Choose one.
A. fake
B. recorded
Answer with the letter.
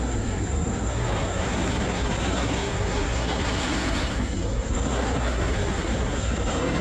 A